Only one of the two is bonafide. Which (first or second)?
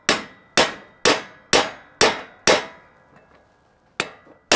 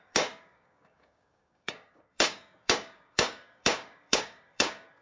first